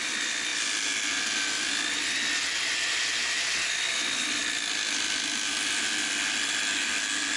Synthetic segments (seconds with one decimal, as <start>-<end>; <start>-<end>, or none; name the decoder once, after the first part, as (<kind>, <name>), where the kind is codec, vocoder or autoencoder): none